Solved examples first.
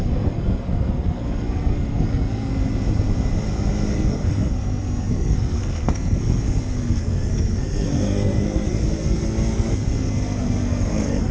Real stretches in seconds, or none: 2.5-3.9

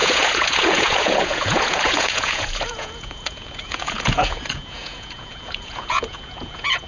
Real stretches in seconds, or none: none

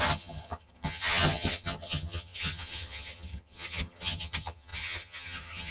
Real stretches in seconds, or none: none

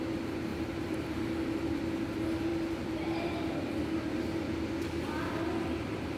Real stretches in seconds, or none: 0.0-0.5; 1.2-2.5; 3.5-6.2

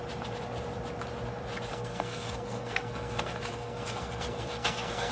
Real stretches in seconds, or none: 0.0-1.7

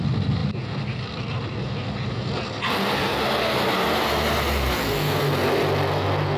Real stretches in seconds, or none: 0.0-6.4

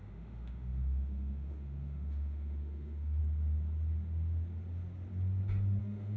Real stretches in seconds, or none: 3.2-5.8